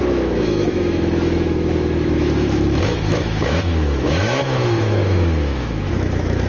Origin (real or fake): fake